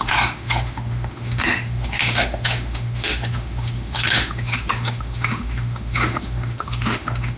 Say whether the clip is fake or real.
fake